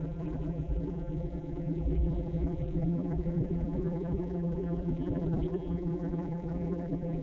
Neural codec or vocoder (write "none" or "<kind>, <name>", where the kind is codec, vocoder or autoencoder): vocoder, BigVGAN v2